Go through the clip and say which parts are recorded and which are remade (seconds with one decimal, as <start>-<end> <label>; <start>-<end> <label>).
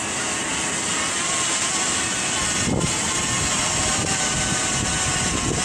0.0-5.6 recorded